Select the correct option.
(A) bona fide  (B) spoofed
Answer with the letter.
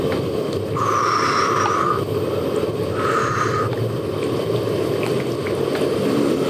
A